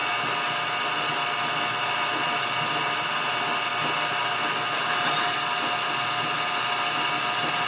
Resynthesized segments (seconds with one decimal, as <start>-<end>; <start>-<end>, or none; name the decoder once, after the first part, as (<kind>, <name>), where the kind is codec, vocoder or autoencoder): none